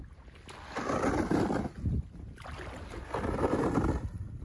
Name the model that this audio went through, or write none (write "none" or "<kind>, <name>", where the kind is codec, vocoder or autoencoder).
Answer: none